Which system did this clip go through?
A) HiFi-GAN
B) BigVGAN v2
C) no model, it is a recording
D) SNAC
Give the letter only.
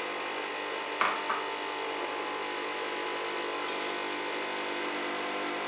C